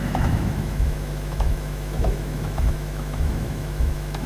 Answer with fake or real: fake